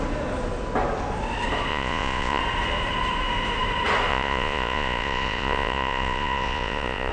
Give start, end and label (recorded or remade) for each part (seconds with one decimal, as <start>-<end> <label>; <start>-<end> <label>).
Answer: 0.0-1.7 recorded; 1.7-2.4 remade; 2.4-4.1 recorded; 4.1-7.1 remade